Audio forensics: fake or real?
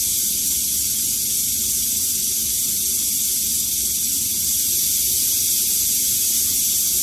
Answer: real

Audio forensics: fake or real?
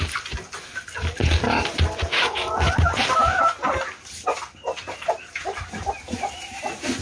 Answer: real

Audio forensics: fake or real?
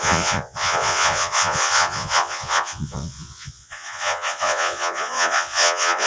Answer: fake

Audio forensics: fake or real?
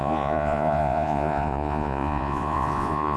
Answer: fake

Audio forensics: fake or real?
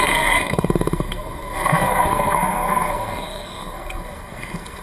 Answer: fake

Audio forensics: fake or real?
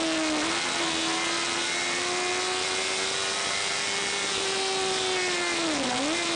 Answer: real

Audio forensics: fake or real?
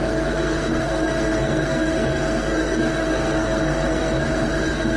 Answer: fake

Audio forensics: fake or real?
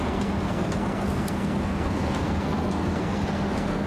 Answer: fake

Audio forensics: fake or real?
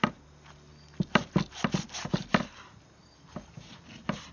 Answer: real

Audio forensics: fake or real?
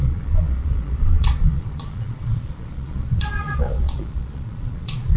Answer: fake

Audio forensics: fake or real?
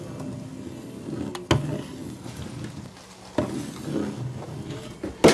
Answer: real